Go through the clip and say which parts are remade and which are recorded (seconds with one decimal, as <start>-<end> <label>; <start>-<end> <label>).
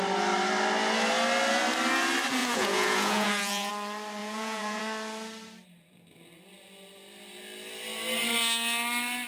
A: 0.0-2.4 recorded; 2.4-3.7 remade; 3.7-4.2 recorded; 4.2-4.8 remade; 4.8-9.3 recorded